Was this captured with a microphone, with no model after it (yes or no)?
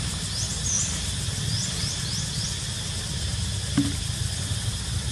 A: yes